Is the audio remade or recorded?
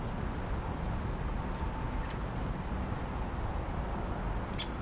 recorded